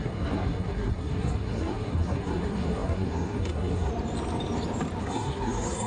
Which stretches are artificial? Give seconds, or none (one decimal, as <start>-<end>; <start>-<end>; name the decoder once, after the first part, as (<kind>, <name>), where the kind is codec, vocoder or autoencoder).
0.0-3.9 (codec, SNAC); 5.0-5.9